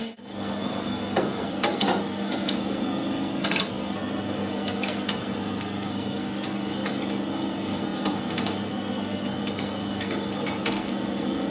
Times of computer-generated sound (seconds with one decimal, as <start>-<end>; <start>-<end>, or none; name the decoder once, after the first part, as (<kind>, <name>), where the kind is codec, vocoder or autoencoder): 0.0-11.5 (codec, SNAC)